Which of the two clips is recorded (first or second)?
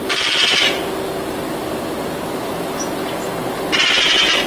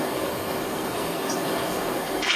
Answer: first